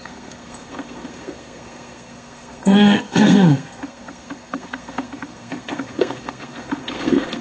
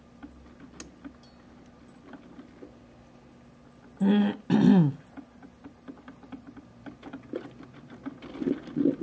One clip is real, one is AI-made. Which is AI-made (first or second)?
first